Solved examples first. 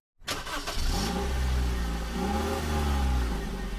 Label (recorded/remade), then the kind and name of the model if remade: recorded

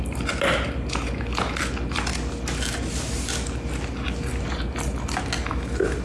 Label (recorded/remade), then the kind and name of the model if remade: recorded